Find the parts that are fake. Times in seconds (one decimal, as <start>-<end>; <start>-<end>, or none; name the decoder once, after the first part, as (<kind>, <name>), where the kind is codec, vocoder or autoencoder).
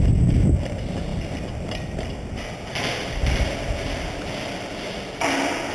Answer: none